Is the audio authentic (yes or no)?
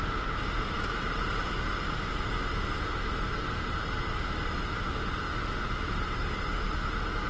yes